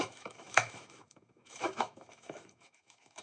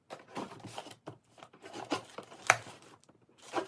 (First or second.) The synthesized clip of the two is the first